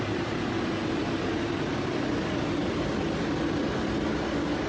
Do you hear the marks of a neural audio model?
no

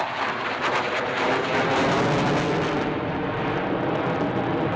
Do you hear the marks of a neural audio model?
no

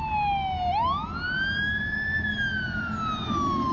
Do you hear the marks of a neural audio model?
no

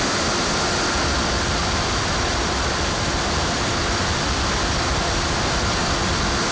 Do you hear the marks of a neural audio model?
no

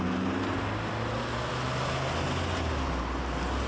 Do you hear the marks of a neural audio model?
no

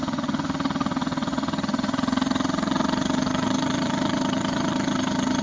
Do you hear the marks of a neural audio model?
yes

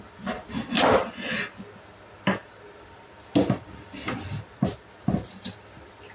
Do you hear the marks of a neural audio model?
no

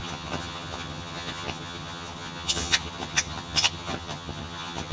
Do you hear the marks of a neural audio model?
yes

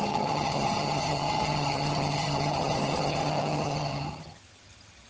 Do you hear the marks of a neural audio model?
yes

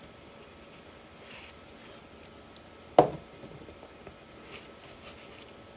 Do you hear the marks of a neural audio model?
no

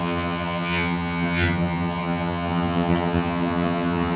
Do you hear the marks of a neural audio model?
yes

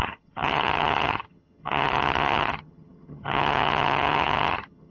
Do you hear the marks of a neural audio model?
yes